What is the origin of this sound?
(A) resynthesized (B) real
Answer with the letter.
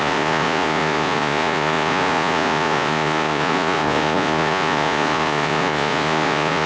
A